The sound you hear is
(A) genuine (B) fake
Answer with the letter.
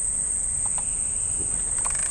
A